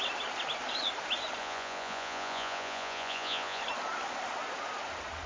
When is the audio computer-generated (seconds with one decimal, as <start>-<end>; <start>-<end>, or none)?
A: 1.4-3.6